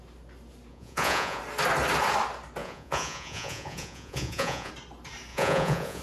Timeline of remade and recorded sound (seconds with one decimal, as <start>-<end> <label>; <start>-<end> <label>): 0.0-0.7 recorded; 0.7-1.4 remade; 1.4-2.6 recorded; 2.6-4.7 remade; 4.7-5.3 recorded; 5.3-6.0 remade